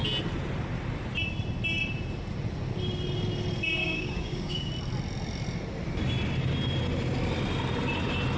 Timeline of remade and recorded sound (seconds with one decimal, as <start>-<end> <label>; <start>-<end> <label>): 0.0-3.8 recorded; 3.8-4.7 remade; 4.7-8.4 recorded